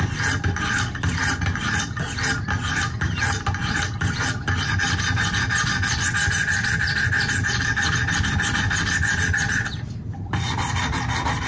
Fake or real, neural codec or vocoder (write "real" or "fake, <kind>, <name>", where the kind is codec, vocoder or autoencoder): real